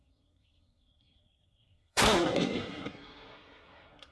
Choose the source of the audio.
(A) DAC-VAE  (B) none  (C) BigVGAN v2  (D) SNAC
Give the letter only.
D